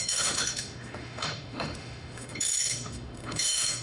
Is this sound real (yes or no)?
no